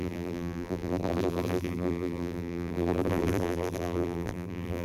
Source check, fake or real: fake